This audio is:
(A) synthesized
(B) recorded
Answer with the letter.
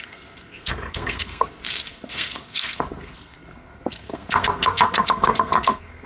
A